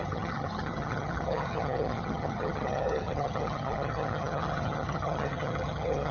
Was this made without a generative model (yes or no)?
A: no